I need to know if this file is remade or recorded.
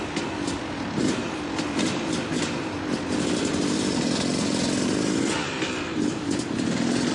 recorded